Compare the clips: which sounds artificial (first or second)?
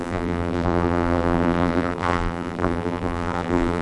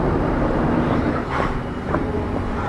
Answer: first